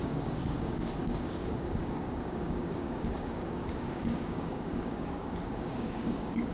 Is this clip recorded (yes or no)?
no